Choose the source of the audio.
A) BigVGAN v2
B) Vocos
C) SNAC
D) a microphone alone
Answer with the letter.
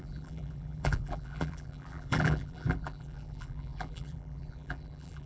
A